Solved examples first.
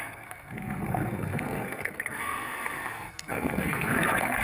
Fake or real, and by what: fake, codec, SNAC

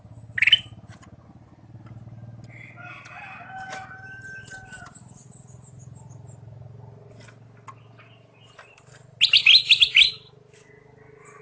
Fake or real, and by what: real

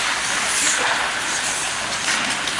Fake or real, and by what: real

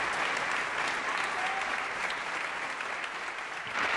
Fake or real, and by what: real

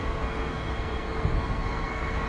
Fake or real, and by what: fake, codec, SNAC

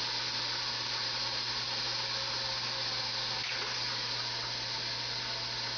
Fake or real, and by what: real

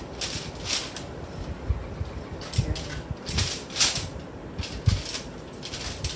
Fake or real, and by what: real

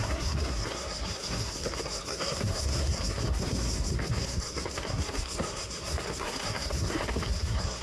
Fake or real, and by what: fake, codec, SNAC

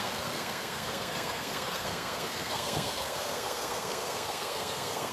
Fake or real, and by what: fake, codec, SNAC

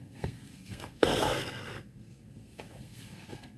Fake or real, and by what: fake, codec, SNAC